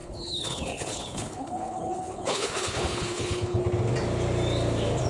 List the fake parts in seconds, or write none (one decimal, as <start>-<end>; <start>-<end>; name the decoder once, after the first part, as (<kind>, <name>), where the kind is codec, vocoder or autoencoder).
0.0-3.6 (codec, HILCodec)